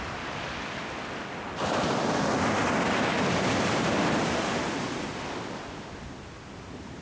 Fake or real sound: real